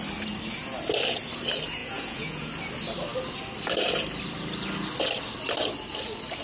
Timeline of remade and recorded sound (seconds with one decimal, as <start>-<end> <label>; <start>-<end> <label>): 0.0-1.8 recorded; 1.8-2.5 remade; 2.5-6.4 recorded